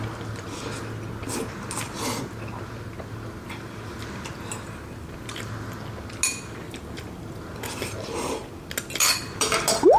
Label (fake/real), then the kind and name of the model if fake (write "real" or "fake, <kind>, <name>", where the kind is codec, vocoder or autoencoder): real